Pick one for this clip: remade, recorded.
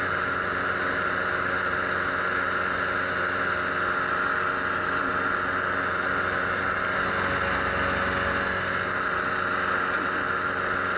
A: recorded